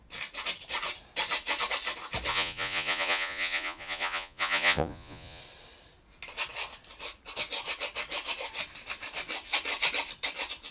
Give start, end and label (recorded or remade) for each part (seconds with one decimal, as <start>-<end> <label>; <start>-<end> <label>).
0.0-2.3 recorded; 2.3-5.4 remade; 5.4-10.7 recorded